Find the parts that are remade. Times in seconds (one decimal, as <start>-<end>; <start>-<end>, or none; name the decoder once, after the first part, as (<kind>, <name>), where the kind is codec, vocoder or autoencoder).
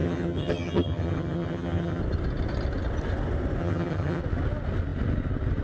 0.0-2.0 (vocoder, HiFi-GAN); 3.6-4.2